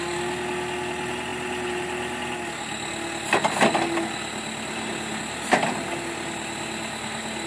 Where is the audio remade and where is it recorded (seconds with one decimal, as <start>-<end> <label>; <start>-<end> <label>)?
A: 0.0-7.5 recorded